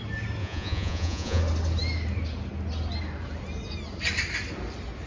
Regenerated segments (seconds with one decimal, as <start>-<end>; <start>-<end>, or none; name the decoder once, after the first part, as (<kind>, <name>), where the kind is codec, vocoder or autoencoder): 0.4-1.4 (vocoder, Vocos)